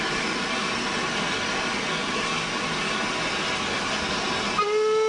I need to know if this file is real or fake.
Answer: real